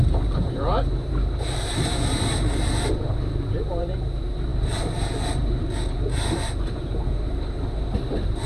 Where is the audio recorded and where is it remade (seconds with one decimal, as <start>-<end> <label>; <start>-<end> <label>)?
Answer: 0.0-8.5 remade